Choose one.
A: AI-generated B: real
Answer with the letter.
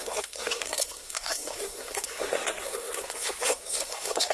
A